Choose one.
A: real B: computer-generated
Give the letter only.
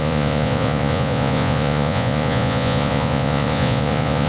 B